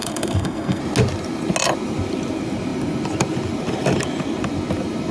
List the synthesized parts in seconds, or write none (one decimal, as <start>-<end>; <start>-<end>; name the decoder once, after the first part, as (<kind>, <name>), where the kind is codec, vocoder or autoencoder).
0.0-0.8 (codec, SNAC)